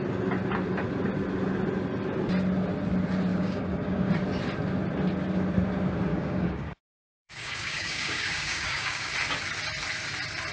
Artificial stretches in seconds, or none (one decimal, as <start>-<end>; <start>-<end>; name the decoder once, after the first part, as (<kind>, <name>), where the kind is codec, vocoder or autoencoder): 3.3-4.1 (codec, DAC); 6.1-9.1